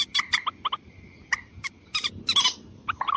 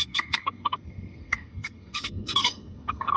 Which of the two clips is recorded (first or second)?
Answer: first